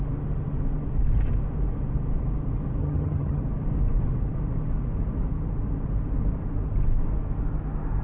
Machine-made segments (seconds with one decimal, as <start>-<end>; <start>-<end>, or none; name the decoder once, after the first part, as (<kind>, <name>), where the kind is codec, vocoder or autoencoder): 2.8-3.4 (vocoder, HiFi-GAN)